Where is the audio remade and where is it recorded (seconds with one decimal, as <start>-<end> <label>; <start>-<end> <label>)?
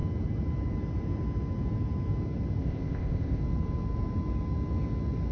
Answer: 0.0-2.6 recorded; 2.6-3.4 remade; 3.4-5.3 recorded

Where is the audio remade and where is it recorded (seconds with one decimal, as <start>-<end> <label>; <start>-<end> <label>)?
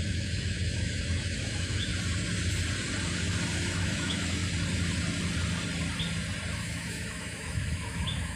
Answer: 0.0-1.9 remade; 1.9-3.8 recorded; 3.8-4.4 remade; 4.4-6.5 recorded; 6.5-8.4 remade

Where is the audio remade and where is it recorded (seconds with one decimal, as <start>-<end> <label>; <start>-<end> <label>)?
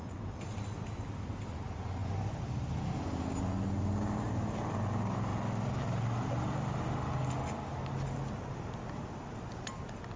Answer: 0.0-10.2 recorded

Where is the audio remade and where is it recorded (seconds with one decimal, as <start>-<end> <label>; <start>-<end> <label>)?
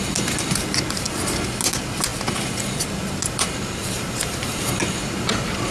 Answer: 0.0-3.8 recorded; 3.8-4.8 remade; 4.8-5.7 recorded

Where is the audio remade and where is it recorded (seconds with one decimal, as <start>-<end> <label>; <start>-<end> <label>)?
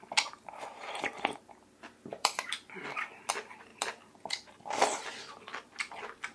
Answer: 0.0-2.1 recorded; 2.1-3.3 remade; 3.3-3.7 recorded; 3.7-4.3 remade; 4.3-6.3 recorded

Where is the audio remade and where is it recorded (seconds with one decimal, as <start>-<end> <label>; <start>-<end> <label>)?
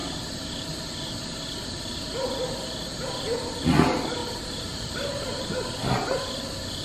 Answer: 0.0-4.2 recorded; 4.2-5.5 remade; 5.5-6.8 recorded